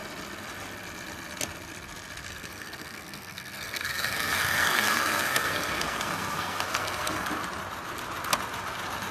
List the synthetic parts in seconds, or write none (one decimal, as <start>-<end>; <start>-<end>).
2.3-7.3